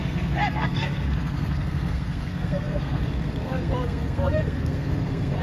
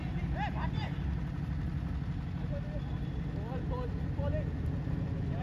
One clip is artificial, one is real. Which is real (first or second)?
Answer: second